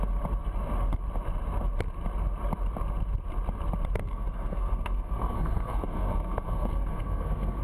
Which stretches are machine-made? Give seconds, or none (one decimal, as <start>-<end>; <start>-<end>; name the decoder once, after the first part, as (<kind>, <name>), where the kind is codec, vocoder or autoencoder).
4.0-7.6 (codec, SNAC)